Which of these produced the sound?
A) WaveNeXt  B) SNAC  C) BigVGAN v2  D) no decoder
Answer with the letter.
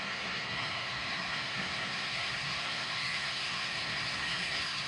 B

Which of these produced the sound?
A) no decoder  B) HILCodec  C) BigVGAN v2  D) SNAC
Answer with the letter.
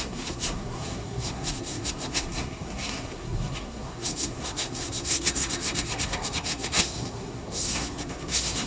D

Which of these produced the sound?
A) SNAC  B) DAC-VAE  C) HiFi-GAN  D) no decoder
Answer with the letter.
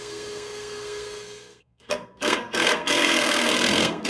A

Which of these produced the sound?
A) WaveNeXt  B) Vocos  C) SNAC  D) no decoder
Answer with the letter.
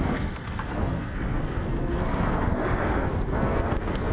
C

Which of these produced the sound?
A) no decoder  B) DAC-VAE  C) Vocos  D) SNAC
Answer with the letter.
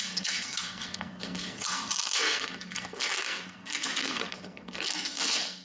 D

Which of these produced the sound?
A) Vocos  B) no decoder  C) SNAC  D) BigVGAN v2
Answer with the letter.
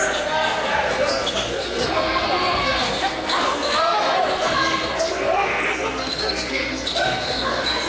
C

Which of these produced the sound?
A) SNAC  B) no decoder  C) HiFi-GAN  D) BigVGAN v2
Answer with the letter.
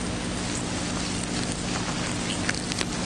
B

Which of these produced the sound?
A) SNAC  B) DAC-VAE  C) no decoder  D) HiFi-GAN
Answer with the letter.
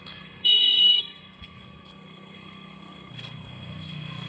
A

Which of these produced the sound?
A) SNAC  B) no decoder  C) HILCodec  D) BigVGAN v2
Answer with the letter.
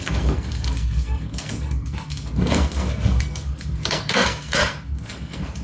A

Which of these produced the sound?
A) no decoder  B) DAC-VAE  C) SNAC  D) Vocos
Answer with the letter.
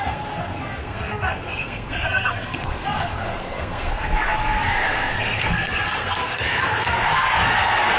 C